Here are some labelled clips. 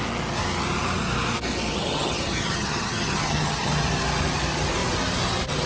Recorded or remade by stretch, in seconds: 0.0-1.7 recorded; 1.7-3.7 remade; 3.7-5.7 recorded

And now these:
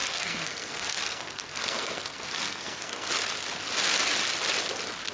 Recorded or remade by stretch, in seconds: 0.0-3.1 remade; 3.1-5.1 recorded

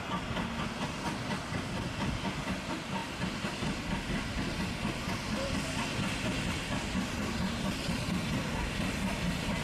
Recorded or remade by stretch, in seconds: 0.0-9.6 recorded

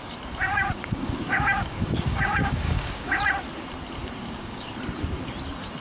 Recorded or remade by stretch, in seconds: 0.0-0.5 recorded; 0.5-3.2 remade; 3.2-4.0 recorded; 4.0-4.7 remade; 4.7-5.8 recorded

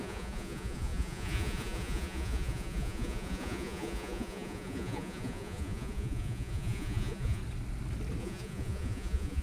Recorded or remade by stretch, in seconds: 0.0-7.4 remade; 7.4-8.2 recorded; 8.2-9.4 remade

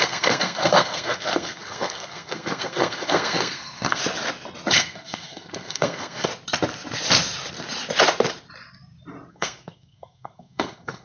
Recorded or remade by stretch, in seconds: 0.0-4.0 remade; 4.0-4.7 recorded; 4.7-6.3 remade; 6.3-9.3 recorded; 9.3-11.0 remade